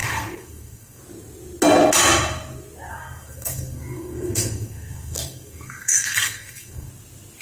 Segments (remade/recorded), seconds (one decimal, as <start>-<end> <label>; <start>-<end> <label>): 0.0-1.0 remade; 1.0-2.9 recorded; 2.9-6.9 remade; 6.9-7.4 recorded

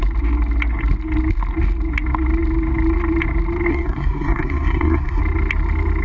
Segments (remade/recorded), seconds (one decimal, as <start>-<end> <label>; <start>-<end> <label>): 0.0-3.7 recorded; 3.7-5.2 remade; 5.2-6.0 recorded

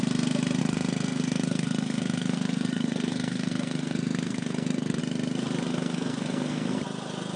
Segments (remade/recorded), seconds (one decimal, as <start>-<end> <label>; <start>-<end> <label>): 0.0-0.6 recorded; 0.6-5.0 remade; 5.0-5.7 recorded; 5.7-6.8 remade; 6.8-7.4 recorded